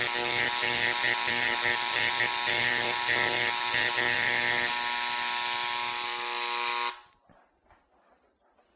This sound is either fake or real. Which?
real